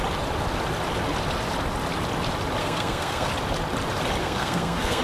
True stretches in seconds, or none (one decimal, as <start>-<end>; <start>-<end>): 0.0-2.6; 3.3-4.2